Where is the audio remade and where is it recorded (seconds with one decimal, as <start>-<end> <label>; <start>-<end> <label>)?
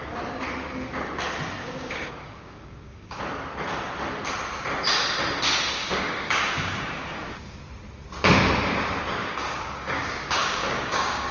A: 0.0-1.6 recorded; 1.6-3.2 remade; 3.2-5.8 recorded; 5.8-7.6 remade; 7.6-9.2 recorded; 9.2-11.3 remade